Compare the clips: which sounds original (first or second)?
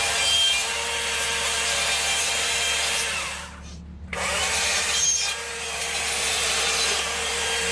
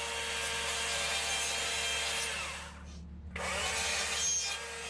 second